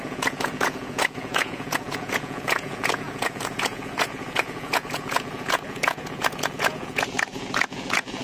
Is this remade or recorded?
remade